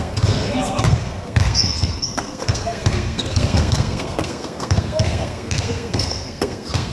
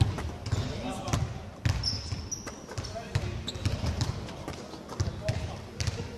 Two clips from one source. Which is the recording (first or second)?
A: second